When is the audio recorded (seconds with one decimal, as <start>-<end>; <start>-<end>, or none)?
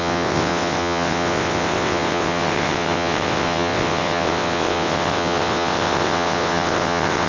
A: none